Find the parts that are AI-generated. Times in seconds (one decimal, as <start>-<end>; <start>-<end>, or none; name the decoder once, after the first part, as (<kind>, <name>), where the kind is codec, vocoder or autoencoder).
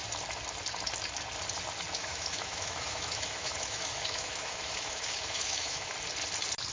2.0-5.9 (autoencoder, DAC-VAE)